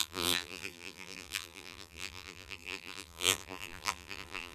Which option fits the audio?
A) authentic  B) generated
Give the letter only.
B